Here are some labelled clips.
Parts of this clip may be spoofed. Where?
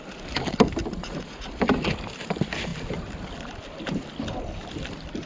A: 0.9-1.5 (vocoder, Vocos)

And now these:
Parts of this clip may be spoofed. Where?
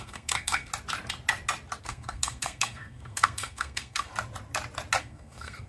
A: 0.0-0.7 (codec, SNAC); 1.8-4.1; 5.0-5.7